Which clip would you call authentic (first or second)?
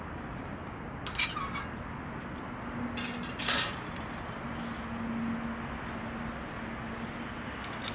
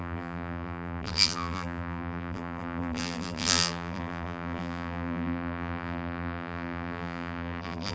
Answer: first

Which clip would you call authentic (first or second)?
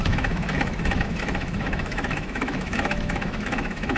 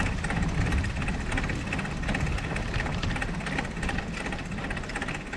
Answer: second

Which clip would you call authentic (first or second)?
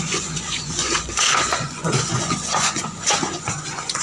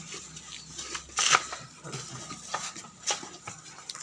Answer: second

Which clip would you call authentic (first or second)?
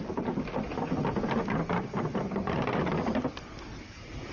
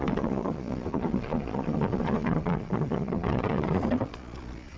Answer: first